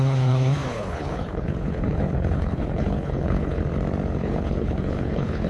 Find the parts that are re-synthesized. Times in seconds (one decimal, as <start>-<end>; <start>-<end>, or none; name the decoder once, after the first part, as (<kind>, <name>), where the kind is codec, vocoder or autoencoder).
0.0-3.6 (codec, HILCodec); 4.2-5.5